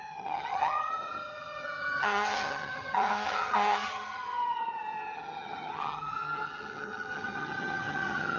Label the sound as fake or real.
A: fake